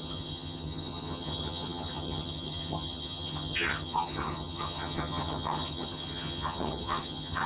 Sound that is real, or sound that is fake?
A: fake